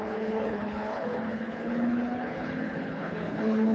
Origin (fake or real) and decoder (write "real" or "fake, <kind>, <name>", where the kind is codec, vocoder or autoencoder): fake, codec, HILCodec